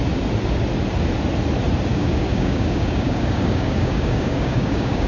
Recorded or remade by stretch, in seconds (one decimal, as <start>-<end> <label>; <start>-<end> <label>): 0.0-1.9 recorded; 1.9-5.1 remade